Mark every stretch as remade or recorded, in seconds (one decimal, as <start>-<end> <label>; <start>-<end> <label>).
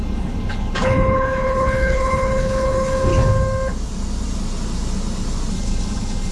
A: 0.0-3.1 remade; 3.1-5.5 recorded; 5.5-6.3 remade